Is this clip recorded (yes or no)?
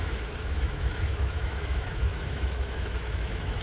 no